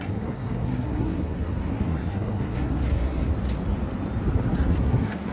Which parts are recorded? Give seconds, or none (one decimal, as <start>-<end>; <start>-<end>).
3.3-4.7